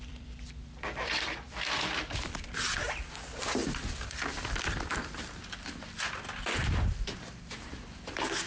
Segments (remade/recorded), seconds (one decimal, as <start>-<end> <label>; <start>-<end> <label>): 0.0-8.5 remade